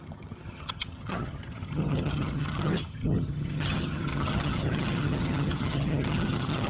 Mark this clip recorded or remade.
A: remade